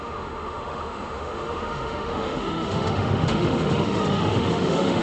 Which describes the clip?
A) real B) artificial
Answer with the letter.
B